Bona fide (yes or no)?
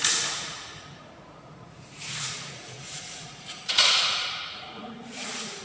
no